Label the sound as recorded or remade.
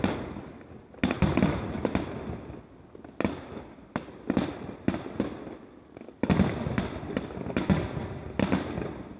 recorded